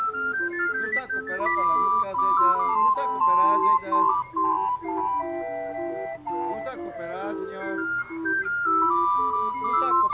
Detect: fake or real real